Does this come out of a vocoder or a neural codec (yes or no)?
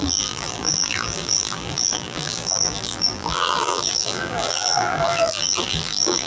yes